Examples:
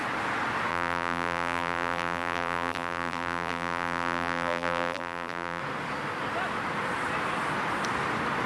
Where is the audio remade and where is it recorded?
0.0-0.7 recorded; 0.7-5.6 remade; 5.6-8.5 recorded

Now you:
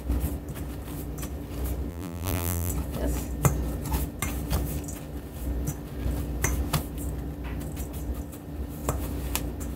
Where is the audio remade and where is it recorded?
0.0-1.9 recorded; 1.9-2.7 remade; 2.7-9.8 recorded

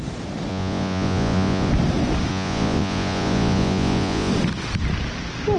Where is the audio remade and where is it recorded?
0.0-0.5 recorded; 0.5-1.7 remade; 1.7-2.3 recorded; 2.3-4.3 remade; 4.3-5.6 recorded

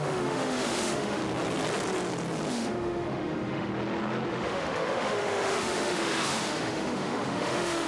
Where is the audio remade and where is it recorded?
0.0-1.2 remade; 1.2-2.5 recorded; 2.5-3.7 remade; 3.7-4.3 recorded; 4.3-7.9 remade

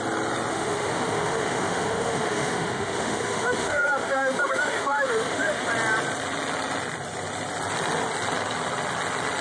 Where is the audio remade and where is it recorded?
0.0-0.5 recorded; 0.5-5.7 remade; 5.7-9.4 recorded

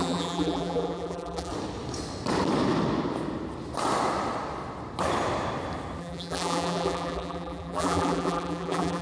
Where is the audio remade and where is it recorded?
0.0-1.5 remade; 1.5-6.0 recorded; 6.0-9.0 remade

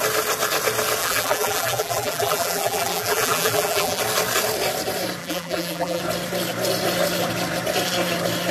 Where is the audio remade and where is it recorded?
0.0-1.0 recorded; 1.0-4.0 remade; 4.0-5.2 recorded; 5.2-6.0 remade; 6.0-8.5 recorded

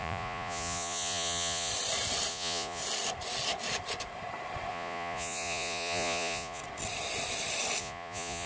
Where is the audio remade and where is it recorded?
0.0-1.7 remade; 1.7-2.3 recorded; 2.3-2.8 remade; 2.8-4.7 recorded; 4.7-6.6 remade; 6.6-7.8 recorded; 7.8-8.5 remade